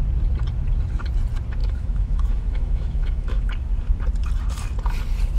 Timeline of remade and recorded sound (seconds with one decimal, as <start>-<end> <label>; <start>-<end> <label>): 0.0-1.6 recorded; 1.6-3.5 remade; 3.5-5.4 recorded